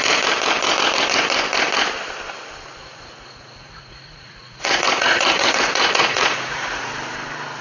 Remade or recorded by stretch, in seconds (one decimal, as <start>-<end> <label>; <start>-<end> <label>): 0.0-2.8 recorded; 2.8-6.9 remade; 6.9-7.6 recorded